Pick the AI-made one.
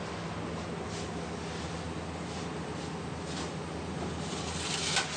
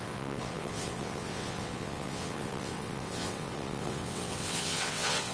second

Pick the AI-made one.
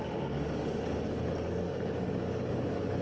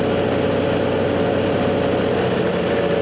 first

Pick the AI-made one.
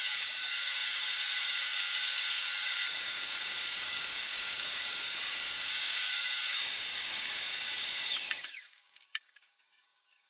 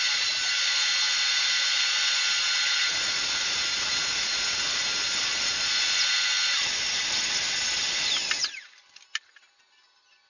first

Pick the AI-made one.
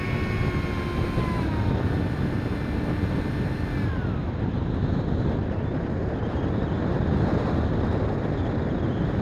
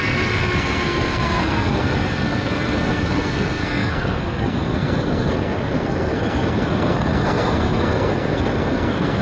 second